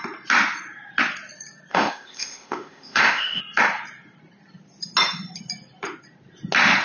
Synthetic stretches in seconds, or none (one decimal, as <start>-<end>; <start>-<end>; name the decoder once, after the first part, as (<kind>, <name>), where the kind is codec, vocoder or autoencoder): 1.7-3.4 (codec, ZipCodec)

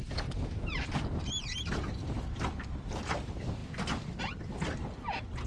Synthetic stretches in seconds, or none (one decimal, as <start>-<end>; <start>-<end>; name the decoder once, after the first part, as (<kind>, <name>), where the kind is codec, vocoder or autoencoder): none

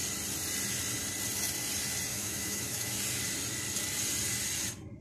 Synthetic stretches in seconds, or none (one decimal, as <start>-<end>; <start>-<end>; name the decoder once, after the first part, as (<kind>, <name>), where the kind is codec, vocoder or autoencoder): 2.1-3.0 (autoencoder, DAC-VAE)

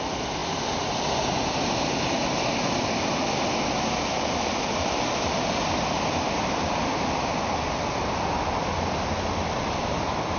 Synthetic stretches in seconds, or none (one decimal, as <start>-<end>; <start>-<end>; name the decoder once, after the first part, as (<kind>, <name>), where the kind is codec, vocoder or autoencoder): none

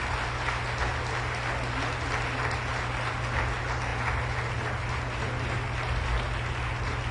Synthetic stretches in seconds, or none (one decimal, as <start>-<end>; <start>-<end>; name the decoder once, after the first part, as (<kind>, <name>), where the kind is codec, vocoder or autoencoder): none

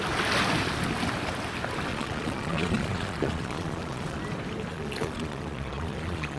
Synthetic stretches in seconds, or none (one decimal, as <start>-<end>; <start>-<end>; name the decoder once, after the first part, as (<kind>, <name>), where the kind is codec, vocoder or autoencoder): 1.9-4.2 (vocoder, Vocos); 4.7-6.4

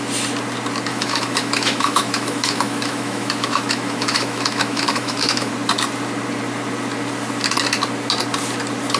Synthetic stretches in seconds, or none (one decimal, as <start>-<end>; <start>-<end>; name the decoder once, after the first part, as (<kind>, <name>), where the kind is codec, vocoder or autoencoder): 0.9-5.5 (autoencoder, DAC-VAE)

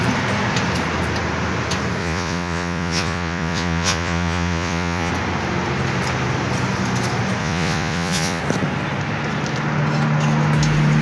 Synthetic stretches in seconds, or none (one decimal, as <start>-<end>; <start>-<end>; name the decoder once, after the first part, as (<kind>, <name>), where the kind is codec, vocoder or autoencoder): 2.0-5.1 (vocoder, Vocos); 7.4-8.4